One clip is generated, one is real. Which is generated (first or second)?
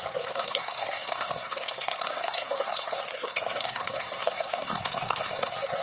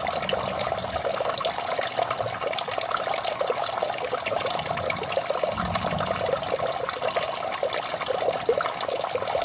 first